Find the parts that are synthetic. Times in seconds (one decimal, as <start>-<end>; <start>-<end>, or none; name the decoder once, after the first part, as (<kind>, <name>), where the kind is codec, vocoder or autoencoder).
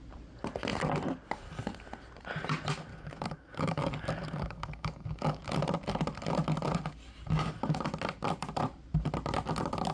2.9-5.4 (codec, DAC)